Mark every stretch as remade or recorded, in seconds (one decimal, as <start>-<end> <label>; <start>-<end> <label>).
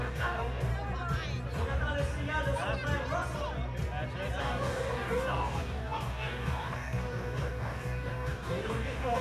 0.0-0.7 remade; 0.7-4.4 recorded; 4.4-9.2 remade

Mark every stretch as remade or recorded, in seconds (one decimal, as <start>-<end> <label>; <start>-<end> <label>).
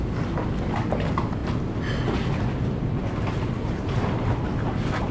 0.0-5.1 recorded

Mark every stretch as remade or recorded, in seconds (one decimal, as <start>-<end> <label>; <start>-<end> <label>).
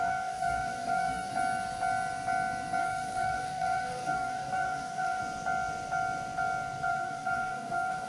0.0-1.3 remade; 1.3-2.8 recorded; 2.8-5.2 remade; 5.2-6.9 recorded; 6.9-8.1 remade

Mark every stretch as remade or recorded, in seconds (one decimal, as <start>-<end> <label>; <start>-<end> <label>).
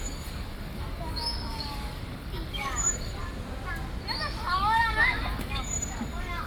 0.0-3.2 remade; 3.2-4.4 recorded; 4.4-6.5 remade